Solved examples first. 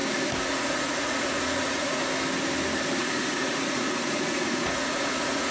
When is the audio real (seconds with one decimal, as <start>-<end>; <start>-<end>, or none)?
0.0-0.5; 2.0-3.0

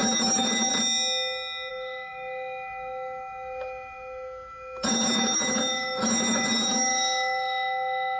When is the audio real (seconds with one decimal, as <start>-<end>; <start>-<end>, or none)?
0.7-1.7

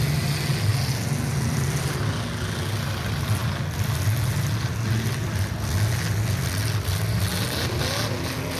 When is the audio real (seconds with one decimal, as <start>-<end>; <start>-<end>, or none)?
0.0-8.6

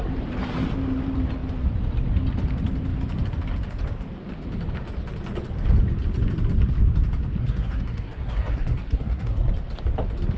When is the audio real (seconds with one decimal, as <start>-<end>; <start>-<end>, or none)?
0.0-7.4; 9.5-10.4